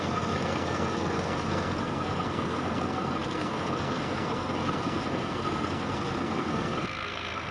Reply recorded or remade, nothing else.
remade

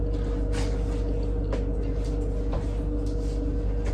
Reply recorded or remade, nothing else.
recorded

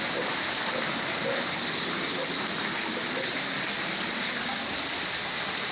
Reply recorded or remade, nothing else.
recorded